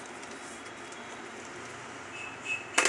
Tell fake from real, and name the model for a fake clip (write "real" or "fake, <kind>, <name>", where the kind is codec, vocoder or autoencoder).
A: real